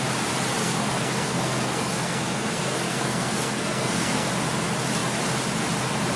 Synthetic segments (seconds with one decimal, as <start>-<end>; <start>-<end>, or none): 0.6-4.3